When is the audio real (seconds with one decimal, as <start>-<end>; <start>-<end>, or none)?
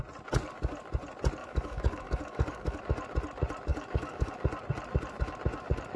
0.0-1.4; 2.8-3.7; 4.3-6.0